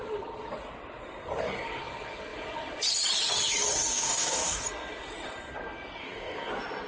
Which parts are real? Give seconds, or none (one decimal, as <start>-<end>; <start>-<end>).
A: 0.0-3.9; 4.6-6.0; 6.5-6.9